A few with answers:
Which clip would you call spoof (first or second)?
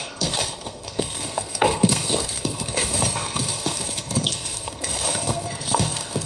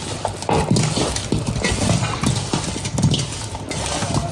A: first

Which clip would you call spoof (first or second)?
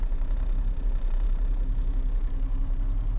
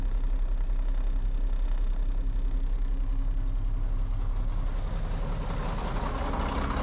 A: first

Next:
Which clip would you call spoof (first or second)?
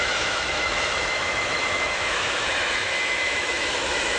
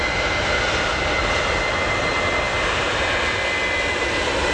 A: first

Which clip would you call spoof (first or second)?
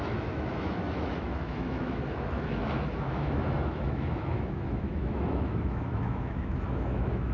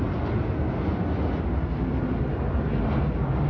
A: first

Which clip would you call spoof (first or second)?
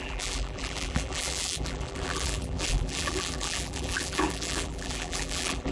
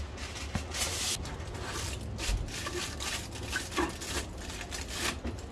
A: first